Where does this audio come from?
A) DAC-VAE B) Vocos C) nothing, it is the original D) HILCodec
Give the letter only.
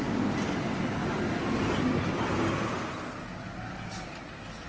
C